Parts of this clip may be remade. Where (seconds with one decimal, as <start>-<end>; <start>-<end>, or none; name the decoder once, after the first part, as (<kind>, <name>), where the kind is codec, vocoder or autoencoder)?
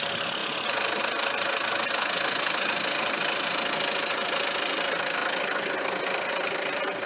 none